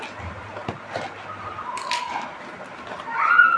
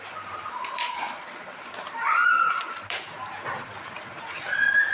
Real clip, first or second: first